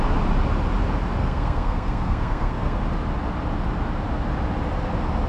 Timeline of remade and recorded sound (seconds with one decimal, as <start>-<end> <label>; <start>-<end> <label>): 0.0-1.2 recorded; 1.2-2.8 remade; 2.8-5.3 recorded

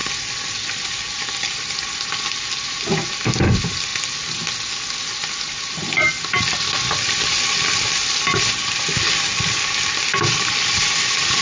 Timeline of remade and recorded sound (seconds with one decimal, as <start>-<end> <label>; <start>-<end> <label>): 0.0-11.4 recorded

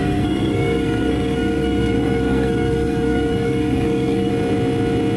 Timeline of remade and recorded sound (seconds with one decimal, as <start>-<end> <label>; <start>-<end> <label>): 0.0-4.3 remade; 4.3-5.2 recorded

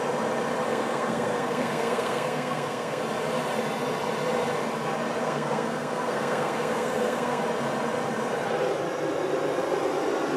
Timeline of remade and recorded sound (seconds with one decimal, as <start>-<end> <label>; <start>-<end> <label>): 0.0-0.7 recorded; 0.7-3.0 remade; 3.0-5.2 recorded; 5.2-7.4 remade; 7.4-10.4 recorded

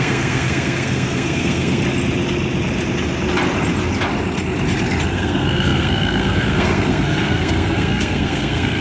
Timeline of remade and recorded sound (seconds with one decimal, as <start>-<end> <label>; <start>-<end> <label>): 0.0-1.8 remade; 1.8-5.1 recorded; 5.1-8.8 remade